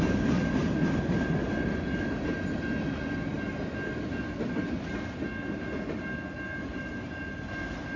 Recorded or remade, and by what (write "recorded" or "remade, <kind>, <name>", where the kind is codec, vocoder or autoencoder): recorded